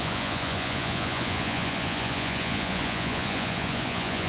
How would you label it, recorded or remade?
remade